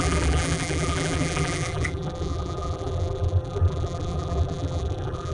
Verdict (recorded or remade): remade